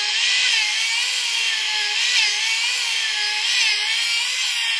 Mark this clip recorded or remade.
recorded